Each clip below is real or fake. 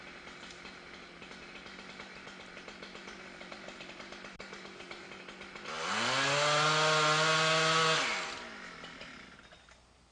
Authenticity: real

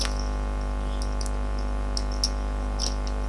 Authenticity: real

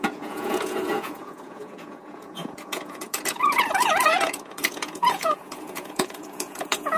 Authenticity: fake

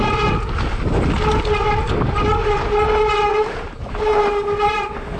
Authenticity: real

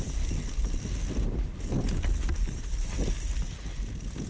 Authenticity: real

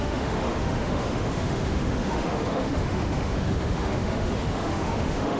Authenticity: fake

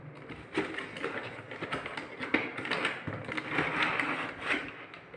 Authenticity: real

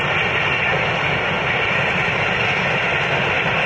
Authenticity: real